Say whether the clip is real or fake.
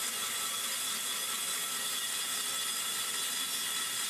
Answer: real